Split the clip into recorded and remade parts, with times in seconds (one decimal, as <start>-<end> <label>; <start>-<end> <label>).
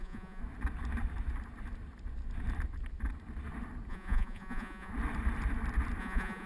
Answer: 0.0-0.4 remade; 0.4-3.9 recorded; 3.9-4.9 remade; 4.9-6.0 recorded; 6.0-6.5 remade